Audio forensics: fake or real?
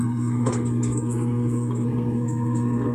fake